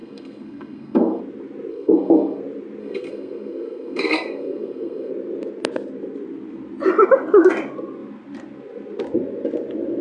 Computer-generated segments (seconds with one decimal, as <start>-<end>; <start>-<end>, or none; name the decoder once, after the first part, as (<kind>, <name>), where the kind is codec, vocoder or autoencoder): 0.0-1.2 (codec, SNAC); 1.7-2.4; 2.8-5.1